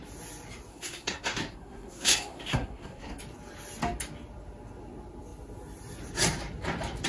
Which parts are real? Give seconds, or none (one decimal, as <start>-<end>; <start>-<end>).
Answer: 0.0-0.7; 3.2-7.1